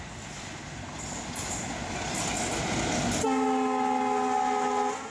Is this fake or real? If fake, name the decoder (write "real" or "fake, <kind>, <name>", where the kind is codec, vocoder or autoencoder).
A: real